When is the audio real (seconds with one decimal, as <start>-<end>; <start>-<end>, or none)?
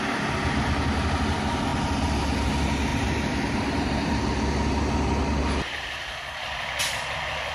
0.0-7.5